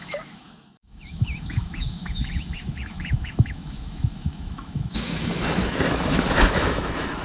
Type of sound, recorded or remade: remade